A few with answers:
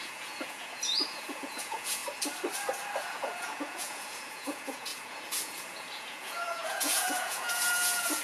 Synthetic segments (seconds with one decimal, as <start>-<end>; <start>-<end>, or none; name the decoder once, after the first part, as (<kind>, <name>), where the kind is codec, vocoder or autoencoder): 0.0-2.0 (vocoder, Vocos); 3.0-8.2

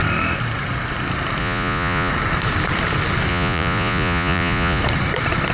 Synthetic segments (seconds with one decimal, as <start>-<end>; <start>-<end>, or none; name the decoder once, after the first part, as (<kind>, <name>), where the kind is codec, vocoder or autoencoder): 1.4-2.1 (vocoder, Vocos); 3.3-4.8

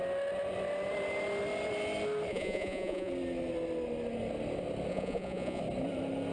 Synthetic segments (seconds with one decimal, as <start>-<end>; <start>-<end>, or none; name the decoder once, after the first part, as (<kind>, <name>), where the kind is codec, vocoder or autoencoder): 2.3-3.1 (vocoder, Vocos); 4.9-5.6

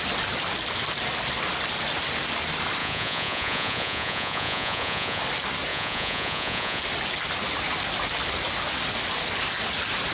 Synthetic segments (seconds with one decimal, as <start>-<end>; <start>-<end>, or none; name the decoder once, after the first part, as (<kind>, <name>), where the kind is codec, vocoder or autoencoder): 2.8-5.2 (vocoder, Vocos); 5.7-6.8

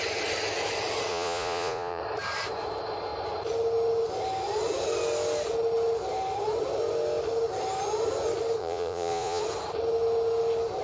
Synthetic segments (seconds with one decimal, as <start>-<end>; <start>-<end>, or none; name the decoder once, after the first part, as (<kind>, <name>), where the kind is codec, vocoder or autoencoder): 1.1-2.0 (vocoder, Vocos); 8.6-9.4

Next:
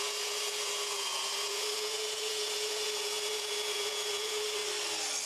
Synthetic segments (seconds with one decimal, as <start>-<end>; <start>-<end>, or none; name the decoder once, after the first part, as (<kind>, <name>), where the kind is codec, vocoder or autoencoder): 0.0-4.6 (vocoder, Vocos)

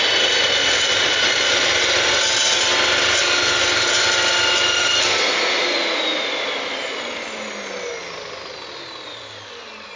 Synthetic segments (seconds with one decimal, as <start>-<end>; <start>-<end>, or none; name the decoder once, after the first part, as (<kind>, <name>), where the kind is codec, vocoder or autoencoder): 0.6-1.7 (vocoder, Vocos)

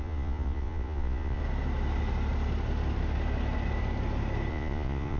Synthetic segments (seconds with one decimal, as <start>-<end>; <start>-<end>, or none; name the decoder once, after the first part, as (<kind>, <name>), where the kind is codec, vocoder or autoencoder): 0.0-1.4 (vocoder, Vocos); 4.5-5.2